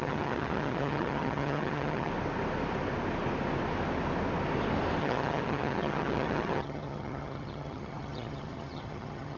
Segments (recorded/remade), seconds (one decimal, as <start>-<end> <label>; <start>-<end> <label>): 0.0-2.1 remade; 2.1-5.0 recorded; 5.0-9.4 remade